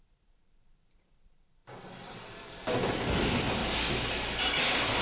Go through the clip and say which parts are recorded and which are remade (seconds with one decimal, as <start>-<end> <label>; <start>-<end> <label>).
0.0-1.6 remade; 1.6-2.1 recorded; 2.1-3.6 remade; 3.6-4.4 recorded; 4.4-5.0 remade